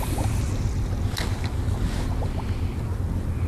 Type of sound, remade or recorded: recorded